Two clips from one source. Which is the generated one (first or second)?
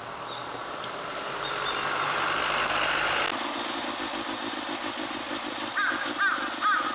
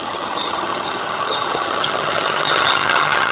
second